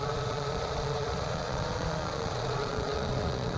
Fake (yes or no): yes